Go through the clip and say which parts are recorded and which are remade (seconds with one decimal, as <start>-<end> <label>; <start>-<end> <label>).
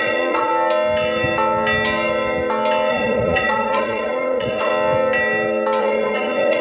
0.0-0.5 remade; 0.5-2.9 recorded; 2.9-4.7 remade; 4.7-5.8 recorded; 5.8-6.6 remade